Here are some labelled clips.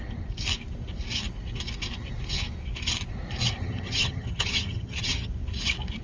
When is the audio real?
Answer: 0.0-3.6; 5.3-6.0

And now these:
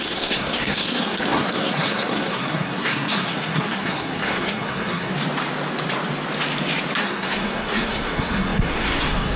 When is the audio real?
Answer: 5.1-7.0

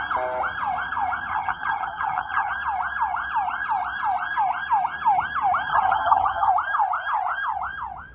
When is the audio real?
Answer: 0.0-1.3; 2.5-5.7; 6.5-8.1

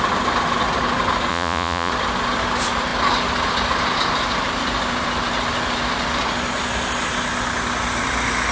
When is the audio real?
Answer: 0.0-1.3; 1.9-8.5

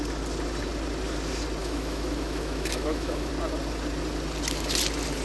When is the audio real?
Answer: 0.0-1.6; 3.3-5.2

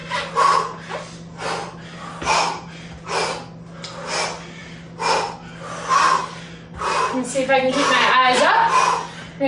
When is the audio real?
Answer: 0.0-9.5

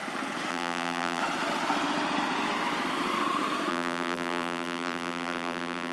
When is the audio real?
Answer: 0.0-0.5; 1.2-3.7

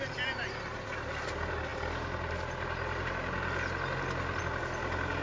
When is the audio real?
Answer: 0.0-5.2